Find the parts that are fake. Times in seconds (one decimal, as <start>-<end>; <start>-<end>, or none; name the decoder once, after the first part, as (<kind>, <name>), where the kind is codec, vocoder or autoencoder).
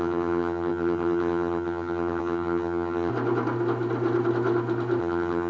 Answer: 0.0-3.1 (vocoder, HiFi-GAN); 5.0-5.5